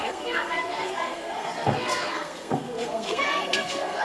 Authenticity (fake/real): fake